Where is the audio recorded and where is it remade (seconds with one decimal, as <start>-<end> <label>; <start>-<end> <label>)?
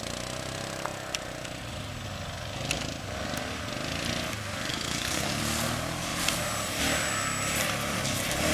0.0-4.7 recorded; 4.7-5.4 remade; 5.4-8.5 recorded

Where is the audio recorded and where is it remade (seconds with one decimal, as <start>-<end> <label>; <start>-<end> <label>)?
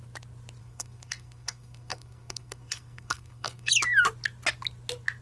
0.0-0.6 recorded; 0.6-3.7 remade; 3.7-5.2 recorded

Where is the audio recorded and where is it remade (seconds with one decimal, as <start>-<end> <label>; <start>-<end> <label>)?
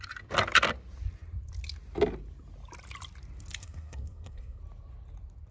0.0-3.6 recorded; 3.6-4.6 remade; 4.6-5.5 recorded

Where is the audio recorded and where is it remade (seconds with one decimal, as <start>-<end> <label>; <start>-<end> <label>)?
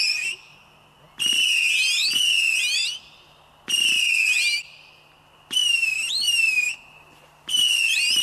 0.0-8.2 recorded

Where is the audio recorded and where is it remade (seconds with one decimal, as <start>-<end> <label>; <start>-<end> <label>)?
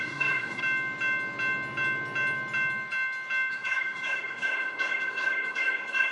0.0-0.6 remade; 0.6-3.5 recorded; 3.5-6.1 remade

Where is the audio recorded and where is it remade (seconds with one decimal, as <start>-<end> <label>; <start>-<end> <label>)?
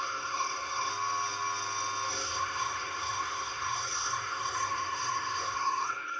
0.0-0.9 remade; 0.9-2.1 recorded; 2.1-6.2 remade